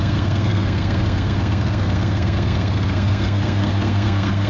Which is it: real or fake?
fake